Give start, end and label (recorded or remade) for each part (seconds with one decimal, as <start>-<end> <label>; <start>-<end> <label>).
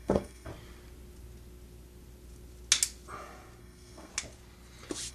0.0-0.5 remade; 0.5-3.6 recorded; 3.6-4.1 remade; 4.1-5.1 recorded